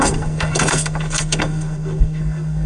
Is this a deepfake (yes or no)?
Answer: yes